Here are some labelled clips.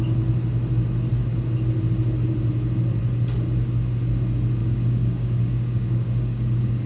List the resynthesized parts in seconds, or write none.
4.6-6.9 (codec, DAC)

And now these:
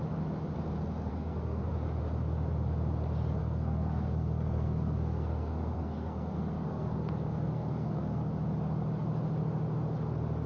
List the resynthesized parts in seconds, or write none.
1.1-1.7 (codec, SNAC); 3.4-8.3

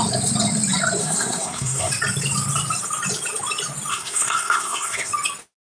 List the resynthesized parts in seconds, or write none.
1.0-1.9 (codec, SNAC); 3.9-5.1

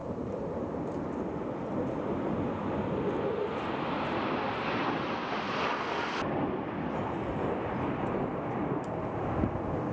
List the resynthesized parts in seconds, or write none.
0.0-0.6 (vocoder, BigVGAN v2)